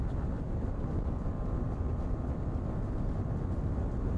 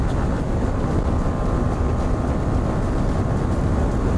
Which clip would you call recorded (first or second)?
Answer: second